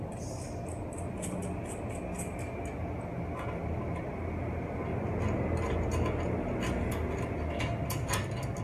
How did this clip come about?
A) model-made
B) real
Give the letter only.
B